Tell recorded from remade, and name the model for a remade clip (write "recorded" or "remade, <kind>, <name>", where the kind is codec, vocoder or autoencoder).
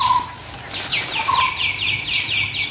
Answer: recorded